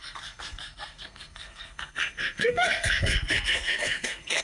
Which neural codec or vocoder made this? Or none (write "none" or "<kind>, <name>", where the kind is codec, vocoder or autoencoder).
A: codec, SNAC